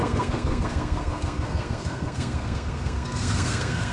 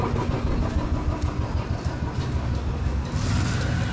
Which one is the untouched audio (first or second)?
second